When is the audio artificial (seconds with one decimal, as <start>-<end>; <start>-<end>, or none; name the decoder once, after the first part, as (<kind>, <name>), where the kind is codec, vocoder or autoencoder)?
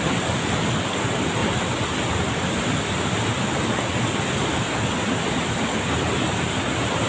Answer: none